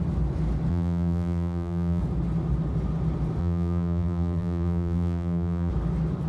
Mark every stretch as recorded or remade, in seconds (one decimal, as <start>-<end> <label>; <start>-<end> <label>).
0.0-0.7 recorded; 0.7-2.0 remade; 2.0-3.4 recorded; 3.4-5.7 remade; 5.7-6.3 recorded